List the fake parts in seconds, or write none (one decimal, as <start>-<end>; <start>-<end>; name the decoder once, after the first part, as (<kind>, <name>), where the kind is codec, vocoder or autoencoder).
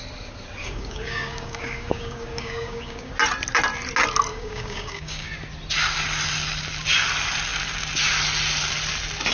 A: 0.6-3.1 (codec, DAC); 4.3-5.3